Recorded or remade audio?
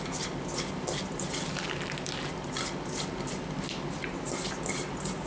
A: recorded